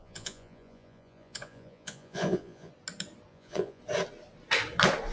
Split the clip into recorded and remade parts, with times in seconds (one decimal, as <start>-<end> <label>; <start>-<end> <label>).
0.0-2.7 remade; 2.7-3.3 recorded; 3.3-3.8 remade; 3.8-5.1 recorded